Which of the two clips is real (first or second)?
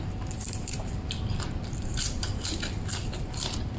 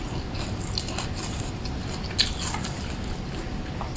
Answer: second